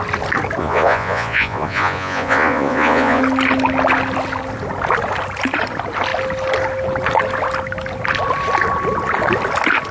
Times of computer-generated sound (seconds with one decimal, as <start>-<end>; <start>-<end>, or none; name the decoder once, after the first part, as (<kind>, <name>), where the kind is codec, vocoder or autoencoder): 0.6-3.2 (vocoder, Vocos)

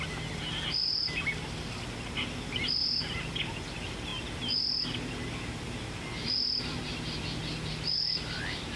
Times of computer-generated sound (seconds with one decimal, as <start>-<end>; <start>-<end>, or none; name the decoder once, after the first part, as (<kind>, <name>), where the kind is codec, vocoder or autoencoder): 2.8-3.6 (vocoder, Vocos)